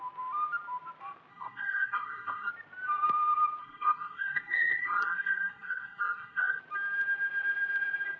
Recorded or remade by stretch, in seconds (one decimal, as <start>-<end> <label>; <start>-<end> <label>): 0.0-1.3 recorded; 1.3-2.5 remade; 2.5-3.6 recorded; 3.6-6.6 remade; 6.6-8.2 recorded